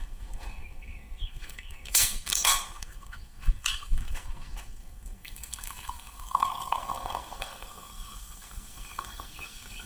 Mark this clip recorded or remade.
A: remade